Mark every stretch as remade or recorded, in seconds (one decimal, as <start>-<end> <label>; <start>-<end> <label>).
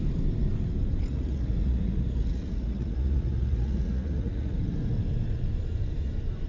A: 0.0-1.1 recorded; 1.1-4.6 remade; 4.6-6.5 recorded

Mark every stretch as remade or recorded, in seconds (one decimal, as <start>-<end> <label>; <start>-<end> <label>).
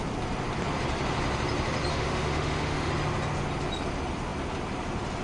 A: 0.0-1.9 recorded; 1.9-2.9 remade; 2.9-5.2 recorded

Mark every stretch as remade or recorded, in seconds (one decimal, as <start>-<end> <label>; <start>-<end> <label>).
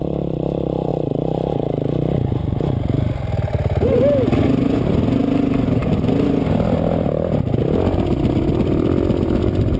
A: 0.0-9.8 recorded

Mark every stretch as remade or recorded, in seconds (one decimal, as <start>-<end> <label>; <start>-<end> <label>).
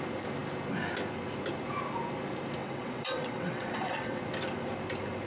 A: 0.0-2.6 recorded; 2.6-4.2 remade; 4.2-5.3 recorded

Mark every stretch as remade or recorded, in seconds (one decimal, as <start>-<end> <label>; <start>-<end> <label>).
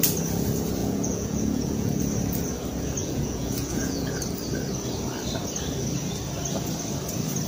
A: 0.0-0.8 recorded; 0.8-2.0 remade; 2.0-3.0 recorded; 3.0-4.1 remade; 4.1-7.5 recorded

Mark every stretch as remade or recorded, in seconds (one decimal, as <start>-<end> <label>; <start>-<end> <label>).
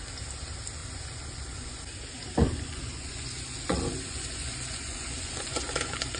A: 0.0-0.8 recorded; 0.8-1.8 remade; 1.8-2.4 recorded; 2.4-6.2 remade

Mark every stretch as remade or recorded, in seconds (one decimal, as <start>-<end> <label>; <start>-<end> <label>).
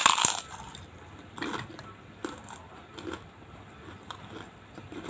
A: 0.0-5.1 recorded